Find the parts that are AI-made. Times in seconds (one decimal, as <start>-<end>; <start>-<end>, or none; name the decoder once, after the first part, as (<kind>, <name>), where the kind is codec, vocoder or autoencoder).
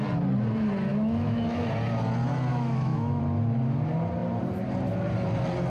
0.9-1.6 (autoencoder, DAC-VAE); 2.5-3.2